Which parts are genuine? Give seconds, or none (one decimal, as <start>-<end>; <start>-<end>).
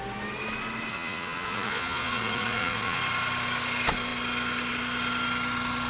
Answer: 0.0-0.9; 3.0-5.9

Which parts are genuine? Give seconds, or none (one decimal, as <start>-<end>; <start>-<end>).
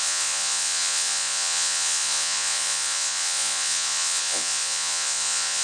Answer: none